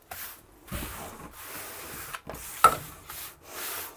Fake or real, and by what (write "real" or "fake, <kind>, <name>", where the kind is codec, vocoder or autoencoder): real